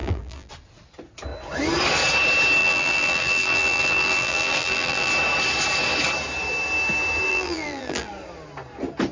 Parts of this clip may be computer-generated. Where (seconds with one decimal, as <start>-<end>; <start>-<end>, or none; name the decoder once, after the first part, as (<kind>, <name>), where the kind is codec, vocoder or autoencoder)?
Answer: 0.0-0.5 (vocoder, BigVGAN v2); 2.6-5.1; 7.3-8.1